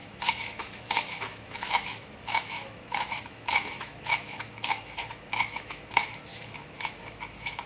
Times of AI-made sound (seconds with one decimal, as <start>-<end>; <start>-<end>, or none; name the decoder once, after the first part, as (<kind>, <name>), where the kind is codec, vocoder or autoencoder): 0.0-7.7 (autoencoder, DAC-VAE)